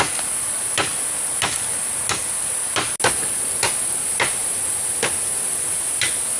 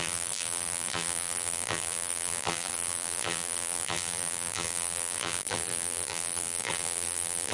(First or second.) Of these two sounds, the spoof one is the second